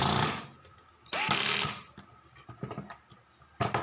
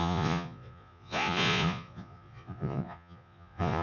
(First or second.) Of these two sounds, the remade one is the second